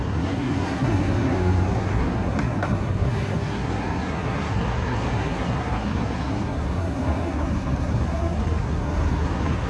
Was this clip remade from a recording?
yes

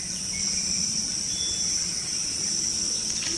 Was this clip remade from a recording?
no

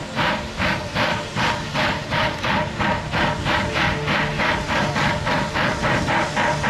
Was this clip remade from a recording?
no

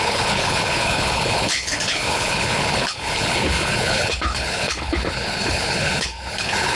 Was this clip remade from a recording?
yes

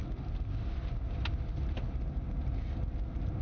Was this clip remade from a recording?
no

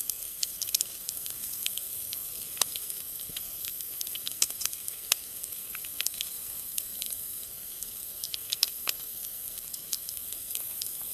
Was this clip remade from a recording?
yes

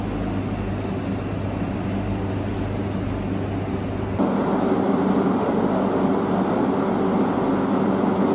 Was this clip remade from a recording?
no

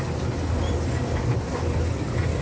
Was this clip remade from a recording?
no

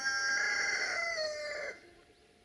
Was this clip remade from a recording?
no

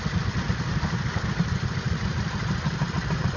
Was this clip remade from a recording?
no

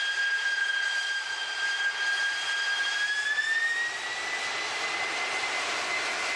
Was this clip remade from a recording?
no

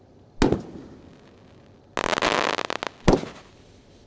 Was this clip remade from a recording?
no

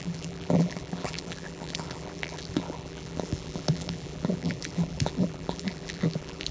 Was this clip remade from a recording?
yes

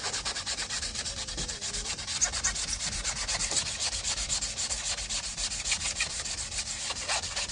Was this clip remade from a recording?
yes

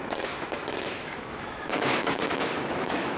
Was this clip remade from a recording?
yes